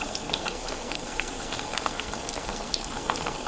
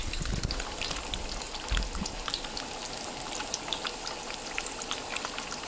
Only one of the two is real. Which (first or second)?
second